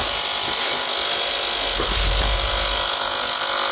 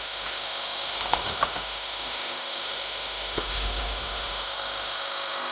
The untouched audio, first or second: first